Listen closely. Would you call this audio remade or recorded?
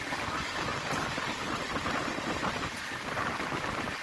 recorded